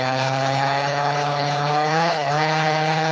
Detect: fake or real fake